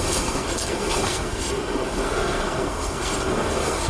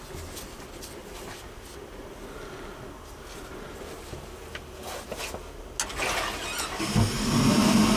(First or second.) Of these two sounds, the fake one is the first